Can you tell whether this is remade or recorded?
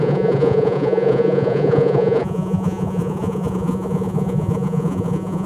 remade